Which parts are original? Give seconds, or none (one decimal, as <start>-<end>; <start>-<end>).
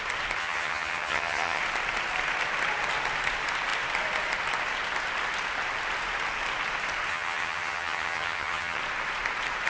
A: 0.0-0.4; 1.6-7.1; 8.8-9.7